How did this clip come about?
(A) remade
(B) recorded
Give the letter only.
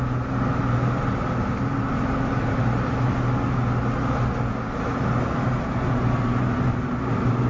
B